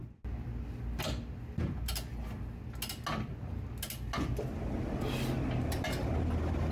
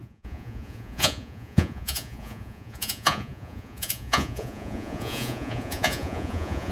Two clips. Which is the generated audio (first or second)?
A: second